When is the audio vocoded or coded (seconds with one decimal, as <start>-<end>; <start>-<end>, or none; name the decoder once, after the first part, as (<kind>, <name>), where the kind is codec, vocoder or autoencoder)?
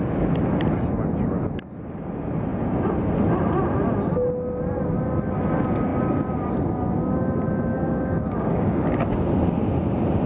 7.7-9.1 (codec, DAC)